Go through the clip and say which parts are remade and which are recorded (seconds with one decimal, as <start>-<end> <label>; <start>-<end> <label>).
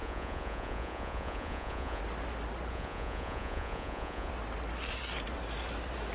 0.0-2.0 remade; 2.0-2.7 recorded; 2.7-4.3 remade; 4.3-6.1 recorded